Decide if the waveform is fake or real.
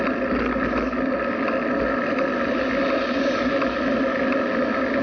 real